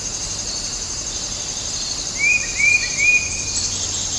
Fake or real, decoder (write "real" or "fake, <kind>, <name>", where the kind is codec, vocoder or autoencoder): fake, vocoder, BigVGAN v2